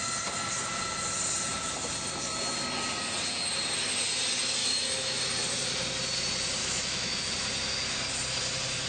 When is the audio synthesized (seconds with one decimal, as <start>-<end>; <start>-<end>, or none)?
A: 4.6-5.2; 6.6-7.2